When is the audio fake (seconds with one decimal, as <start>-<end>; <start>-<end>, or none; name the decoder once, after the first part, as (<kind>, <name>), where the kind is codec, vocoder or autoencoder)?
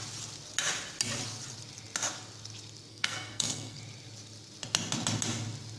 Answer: 2.9-3.8 (codec, SNAC)